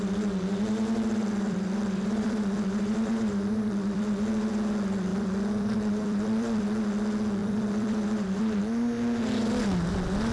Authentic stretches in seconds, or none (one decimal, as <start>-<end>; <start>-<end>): 0.0-1.2; 4.5-5.1; 6.6-7.4; 8.6-10.3